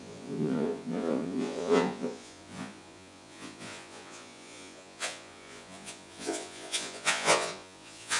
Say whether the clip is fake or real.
fake